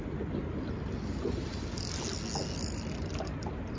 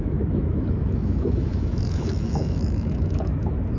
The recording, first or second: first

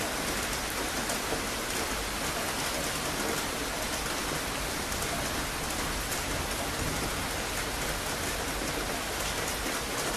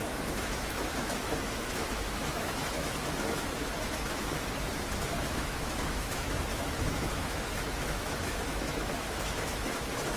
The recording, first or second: first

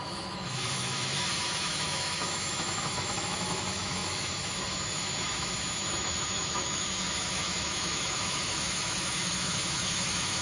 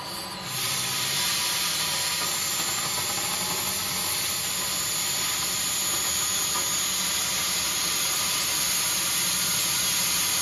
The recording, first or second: second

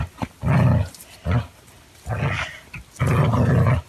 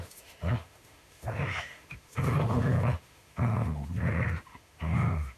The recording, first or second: first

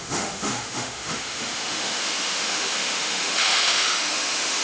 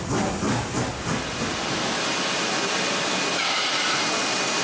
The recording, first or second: second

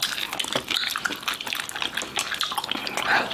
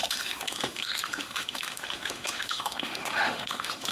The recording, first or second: first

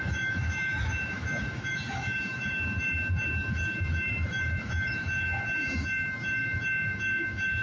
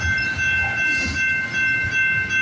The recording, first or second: second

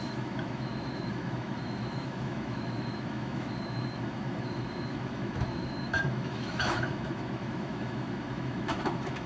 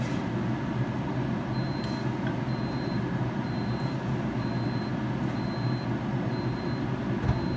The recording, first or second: second